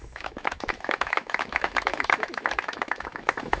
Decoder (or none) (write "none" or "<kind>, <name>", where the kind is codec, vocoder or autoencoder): autoencoder, DAC-VAE